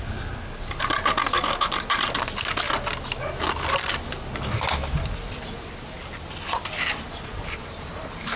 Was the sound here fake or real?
real